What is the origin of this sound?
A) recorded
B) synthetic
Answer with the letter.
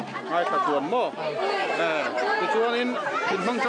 A